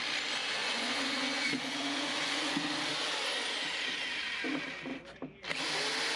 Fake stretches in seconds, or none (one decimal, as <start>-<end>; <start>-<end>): 0.6-2.7